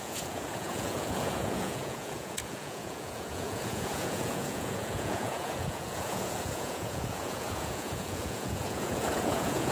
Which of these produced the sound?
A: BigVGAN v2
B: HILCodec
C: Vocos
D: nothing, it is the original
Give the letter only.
C